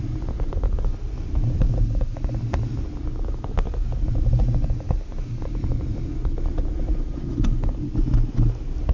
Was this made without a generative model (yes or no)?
yes